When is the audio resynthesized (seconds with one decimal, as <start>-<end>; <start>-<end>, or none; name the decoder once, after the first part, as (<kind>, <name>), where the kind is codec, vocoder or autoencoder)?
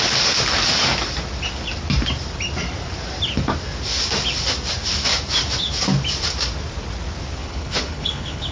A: 7.4-8.5 (codec, HILCodec)